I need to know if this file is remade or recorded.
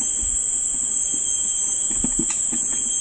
recorded